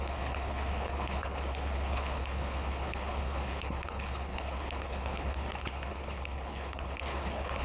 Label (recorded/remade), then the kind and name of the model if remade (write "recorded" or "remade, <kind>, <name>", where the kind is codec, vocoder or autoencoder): remade, codec, HILCodec